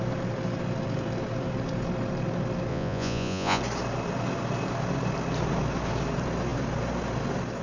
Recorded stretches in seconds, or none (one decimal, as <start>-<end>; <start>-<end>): 0.0-2.7; 3.6-7.6